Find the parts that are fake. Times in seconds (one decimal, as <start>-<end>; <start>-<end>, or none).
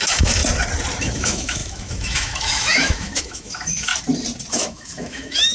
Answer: 0.0-0.4; 1.0-3.9; 4.5-5.5